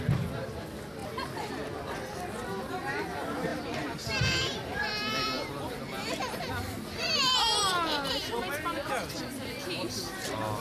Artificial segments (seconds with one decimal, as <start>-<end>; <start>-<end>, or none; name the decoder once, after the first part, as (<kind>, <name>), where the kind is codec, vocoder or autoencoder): 3.5-8.3 (vocoder, BigVGAN v2)